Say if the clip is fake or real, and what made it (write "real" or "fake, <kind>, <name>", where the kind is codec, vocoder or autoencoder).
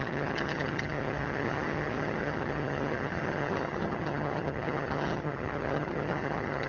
fake, vocoder, HiFi-GAN